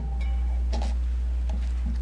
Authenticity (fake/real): real